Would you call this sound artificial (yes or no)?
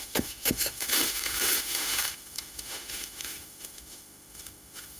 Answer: yes